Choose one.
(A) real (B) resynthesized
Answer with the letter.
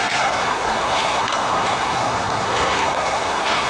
B